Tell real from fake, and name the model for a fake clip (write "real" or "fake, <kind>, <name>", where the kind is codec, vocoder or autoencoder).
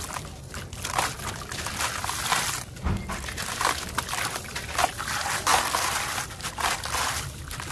real